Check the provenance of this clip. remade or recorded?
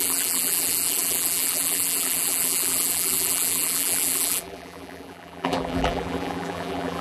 remade